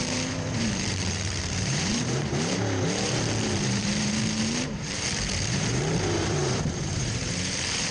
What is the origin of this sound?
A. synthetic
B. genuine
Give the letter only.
A